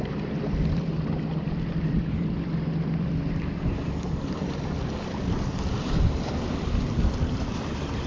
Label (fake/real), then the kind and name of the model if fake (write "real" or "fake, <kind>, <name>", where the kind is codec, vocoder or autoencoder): fake, vocoder, BigVGAN v2